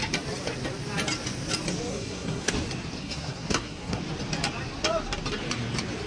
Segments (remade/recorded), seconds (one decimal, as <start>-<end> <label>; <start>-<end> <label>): 0.0-1.9 recorded; 1.9-2.5 remade; 2.5-3.0 recorded; 3.0-4.0 remade; 4.0-6.1 recorded